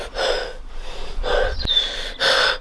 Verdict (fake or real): real